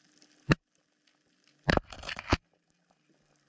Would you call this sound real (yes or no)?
yes